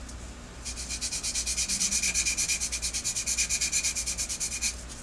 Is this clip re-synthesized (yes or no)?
no